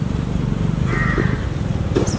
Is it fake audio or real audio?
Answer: real